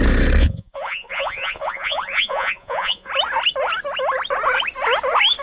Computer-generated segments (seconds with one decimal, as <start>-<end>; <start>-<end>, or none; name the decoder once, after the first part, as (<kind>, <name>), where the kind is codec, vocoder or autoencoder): 0.4-3.1 (vocoder, Vocos)